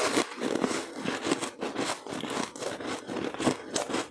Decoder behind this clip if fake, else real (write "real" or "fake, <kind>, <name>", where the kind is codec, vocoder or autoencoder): real